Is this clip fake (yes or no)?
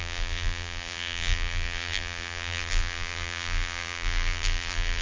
yes